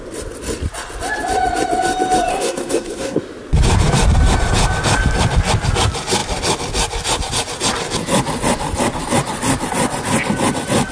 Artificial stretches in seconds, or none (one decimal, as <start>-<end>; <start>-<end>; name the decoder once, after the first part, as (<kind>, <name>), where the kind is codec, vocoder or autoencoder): 2.3-3.2 (codec, SNAC)